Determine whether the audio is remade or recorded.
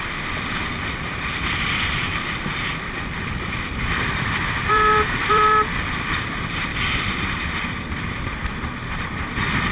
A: remade